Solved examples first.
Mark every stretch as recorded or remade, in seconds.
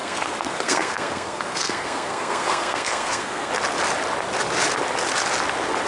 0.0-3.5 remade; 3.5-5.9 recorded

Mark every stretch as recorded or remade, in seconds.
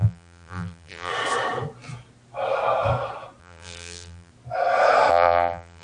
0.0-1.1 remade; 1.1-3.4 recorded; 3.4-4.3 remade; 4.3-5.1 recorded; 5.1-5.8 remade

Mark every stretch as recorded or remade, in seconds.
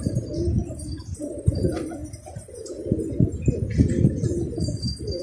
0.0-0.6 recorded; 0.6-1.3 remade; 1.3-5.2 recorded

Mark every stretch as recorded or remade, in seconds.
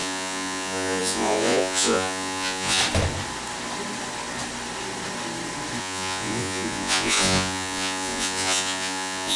0.0-2.8 remade; 2.8-5.8 recorded; 5.8-9.4 remade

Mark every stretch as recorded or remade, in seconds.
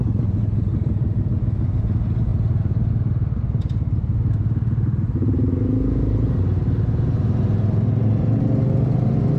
0.0-9.4 recorded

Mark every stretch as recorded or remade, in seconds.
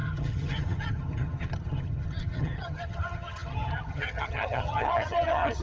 0.0-5.6 remade